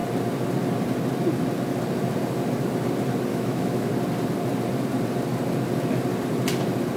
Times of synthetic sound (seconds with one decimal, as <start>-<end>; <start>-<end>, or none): 3.3-3.9